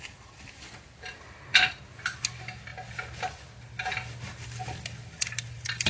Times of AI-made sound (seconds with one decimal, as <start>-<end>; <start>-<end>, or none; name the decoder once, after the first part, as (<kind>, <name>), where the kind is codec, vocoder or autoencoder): none